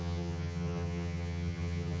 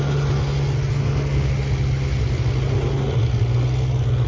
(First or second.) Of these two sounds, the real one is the second